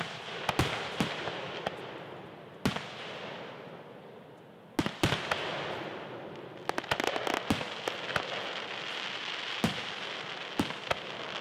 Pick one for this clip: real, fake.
real